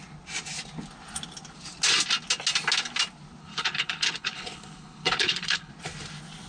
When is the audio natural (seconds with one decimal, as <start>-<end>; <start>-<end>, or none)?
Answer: 0.0-3.4; 5.7-6.5